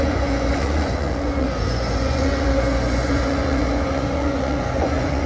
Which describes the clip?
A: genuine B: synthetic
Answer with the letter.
B